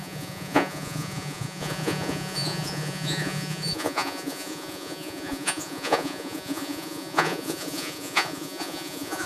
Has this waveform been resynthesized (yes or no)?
yes